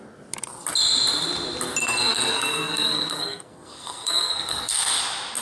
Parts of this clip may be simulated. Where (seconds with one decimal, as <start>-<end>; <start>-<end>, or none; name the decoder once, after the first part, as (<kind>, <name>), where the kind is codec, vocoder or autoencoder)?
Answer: 1.8-5.0 (codec, SNAC)